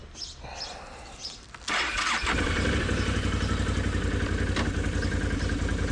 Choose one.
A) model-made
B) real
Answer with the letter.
B